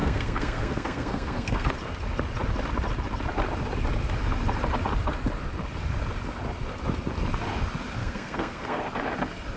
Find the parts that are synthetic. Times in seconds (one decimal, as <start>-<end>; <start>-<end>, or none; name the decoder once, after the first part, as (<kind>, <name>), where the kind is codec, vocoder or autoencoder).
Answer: 0.0-1.7 (codec, SNAC); 8.0-8.8